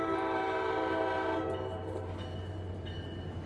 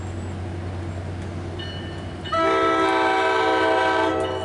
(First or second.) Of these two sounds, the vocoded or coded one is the first